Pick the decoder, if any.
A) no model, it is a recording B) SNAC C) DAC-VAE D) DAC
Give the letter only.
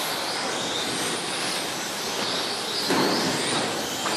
A